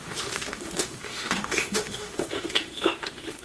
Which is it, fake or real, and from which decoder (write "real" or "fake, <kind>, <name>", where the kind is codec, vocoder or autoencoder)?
fake, autoencoder, DAC-VAE